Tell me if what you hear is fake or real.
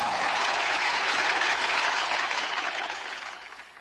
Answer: fake